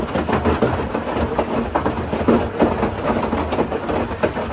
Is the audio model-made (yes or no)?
no